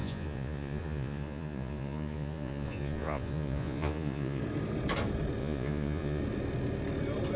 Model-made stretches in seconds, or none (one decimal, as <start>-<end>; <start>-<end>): 0.0-4.4; 5.4-6.2

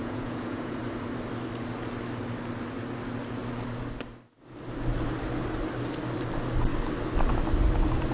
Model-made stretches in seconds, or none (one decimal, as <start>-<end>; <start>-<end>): 0.0-0.8